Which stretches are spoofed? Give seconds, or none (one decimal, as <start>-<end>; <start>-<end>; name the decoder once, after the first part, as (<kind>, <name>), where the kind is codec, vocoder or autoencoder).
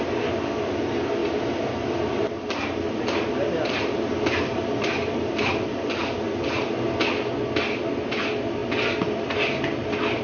1.2-6.4 (vocoder, BigVGAN v2)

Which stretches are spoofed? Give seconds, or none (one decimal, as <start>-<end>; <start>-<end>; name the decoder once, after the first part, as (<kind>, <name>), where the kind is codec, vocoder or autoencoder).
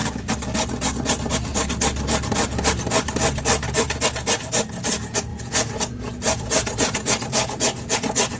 5.3-8.4 (vocoder, Vocos)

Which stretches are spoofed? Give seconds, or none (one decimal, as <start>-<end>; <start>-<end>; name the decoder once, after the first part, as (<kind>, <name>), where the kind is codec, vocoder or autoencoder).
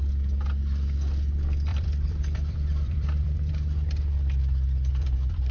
1.7-3.5 (vocoder, BigVGAN v2); 4.9-5.5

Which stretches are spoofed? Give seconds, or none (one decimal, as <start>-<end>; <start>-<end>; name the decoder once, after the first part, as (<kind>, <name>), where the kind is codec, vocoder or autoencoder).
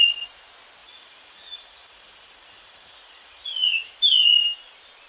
0.8-3.9 (vocoder, Vocos)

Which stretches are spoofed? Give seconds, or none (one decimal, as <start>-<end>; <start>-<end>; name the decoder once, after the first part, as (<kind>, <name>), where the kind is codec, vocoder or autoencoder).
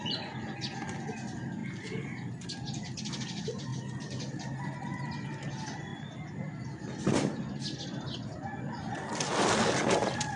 none